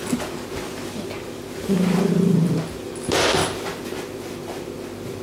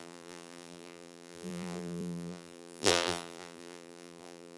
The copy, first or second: second